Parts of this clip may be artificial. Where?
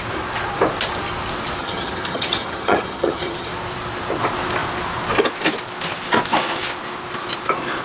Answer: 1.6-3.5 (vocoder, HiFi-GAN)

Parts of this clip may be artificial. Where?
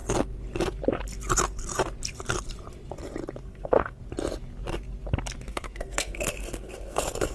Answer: 3.4-4.0 (codec, SNAC); 5.5-7.3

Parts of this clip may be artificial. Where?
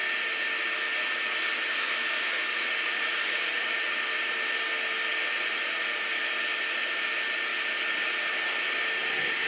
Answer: 2.5-3.7 (vocoder, Vocos); 5.3-6.0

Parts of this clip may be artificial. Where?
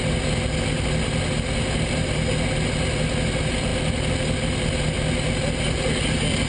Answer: none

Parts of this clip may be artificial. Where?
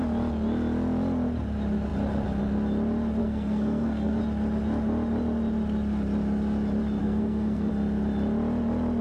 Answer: 3.2-4.2 (codec, SNAC); 7.0-7.7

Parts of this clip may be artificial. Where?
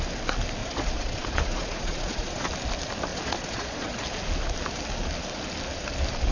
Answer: 0.6-2.5 (vocoder, Vocos); 3.1-4.0